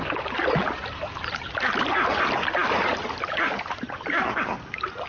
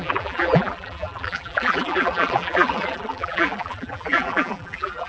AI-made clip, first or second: second